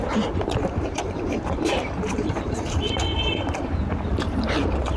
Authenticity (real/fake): fake